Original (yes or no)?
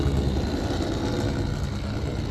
yes